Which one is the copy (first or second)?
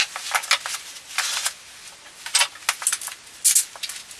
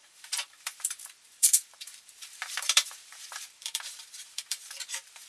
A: second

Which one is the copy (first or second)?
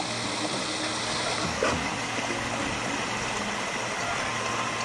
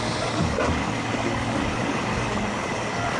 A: second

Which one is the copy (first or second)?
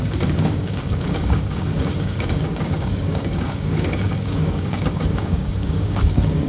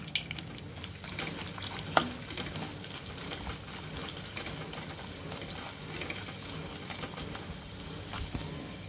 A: first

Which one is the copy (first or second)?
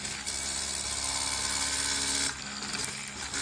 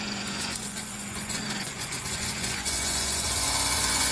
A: second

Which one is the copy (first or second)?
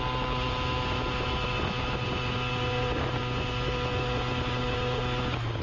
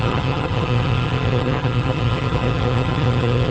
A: second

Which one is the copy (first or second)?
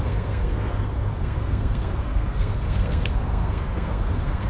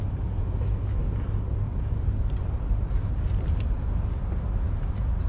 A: first